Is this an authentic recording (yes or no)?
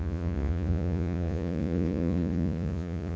no